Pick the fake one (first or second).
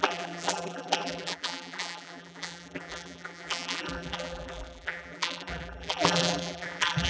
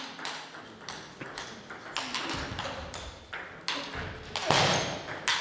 first